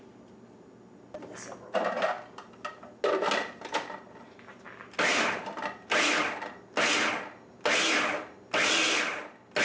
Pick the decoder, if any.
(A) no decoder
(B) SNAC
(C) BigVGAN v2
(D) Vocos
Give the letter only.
A